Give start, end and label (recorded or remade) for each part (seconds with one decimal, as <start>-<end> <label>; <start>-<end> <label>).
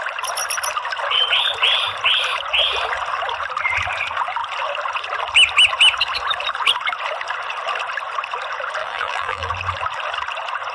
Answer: 0.0-8.8 recorded; 8.8-9.5 remade; 9.5-10.7 recorded